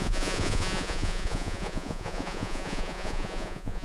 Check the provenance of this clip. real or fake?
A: fake